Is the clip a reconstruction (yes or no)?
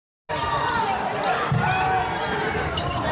no